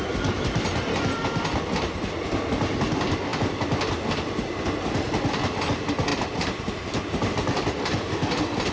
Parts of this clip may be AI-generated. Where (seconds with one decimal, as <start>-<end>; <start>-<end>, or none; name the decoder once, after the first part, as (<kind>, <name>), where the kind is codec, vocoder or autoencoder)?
6.1-7.3 (vocoder, BigVGAN v2)